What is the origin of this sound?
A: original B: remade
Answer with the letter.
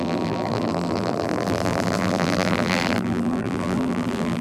B